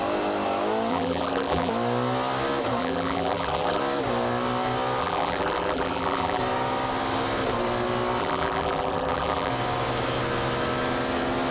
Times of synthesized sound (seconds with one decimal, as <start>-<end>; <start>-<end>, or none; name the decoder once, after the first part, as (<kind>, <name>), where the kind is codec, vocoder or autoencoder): 0.9-1.7 (vocoder, BigVGAN v2); 2.8-3.8; 5.0-6.4; 8.2-9.5